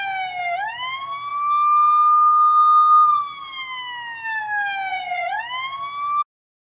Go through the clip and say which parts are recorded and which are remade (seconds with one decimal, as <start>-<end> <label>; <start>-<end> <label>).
0.0-4.9 recorded; 4.9-5.4 remade; 5.4-6.6 recorded